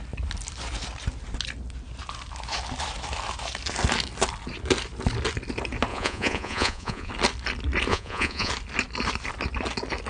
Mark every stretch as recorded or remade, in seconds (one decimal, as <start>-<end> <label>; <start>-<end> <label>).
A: 0.0-5.9 recorded; 5.9-7.1 remade; 7.1-7.9 recorded; 7.9-8.5 remade; 8.5-10.1 recorded